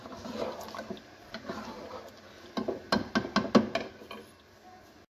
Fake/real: real